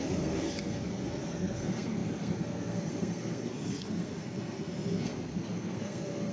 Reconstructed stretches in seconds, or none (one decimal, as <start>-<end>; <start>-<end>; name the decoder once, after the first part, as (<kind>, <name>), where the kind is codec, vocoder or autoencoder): 0.0-6.3 (codec, SNAC)

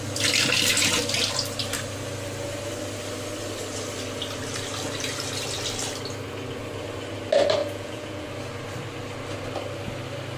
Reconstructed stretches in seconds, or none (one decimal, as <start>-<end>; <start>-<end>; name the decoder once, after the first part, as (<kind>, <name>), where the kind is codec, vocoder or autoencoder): 7.6-8.3 (vocoder, Vocos)

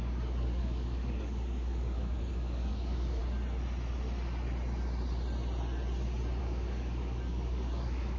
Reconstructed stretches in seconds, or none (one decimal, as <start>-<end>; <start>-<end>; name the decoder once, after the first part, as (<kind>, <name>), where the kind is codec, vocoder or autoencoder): 0.0-3.2 (codec, DAC); 6.4-8.2

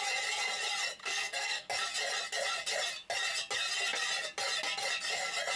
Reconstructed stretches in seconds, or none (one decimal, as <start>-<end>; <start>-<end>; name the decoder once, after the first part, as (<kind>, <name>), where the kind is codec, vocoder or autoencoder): 1.0-1.7 (codec, SNAC)

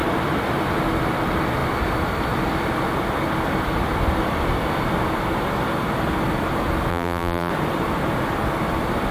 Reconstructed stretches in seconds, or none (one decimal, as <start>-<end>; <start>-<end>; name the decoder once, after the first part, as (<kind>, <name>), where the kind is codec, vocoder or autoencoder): 6.9-7.5 (vocoder, BigVGAN v2)